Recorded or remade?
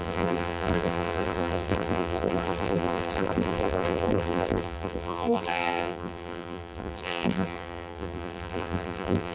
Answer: remade